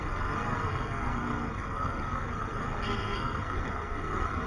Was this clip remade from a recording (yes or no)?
yes